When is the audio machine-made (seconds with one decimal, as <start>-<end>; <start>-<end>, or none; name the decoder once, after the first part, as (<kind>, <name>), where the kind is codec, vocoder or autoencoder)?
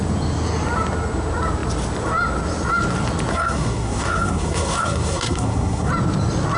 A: 3.3-5.9 (codec, SNAC)